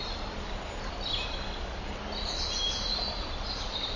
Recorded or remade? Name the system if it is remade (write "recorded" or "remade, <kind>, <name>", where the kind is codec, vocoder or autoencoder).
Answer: recorded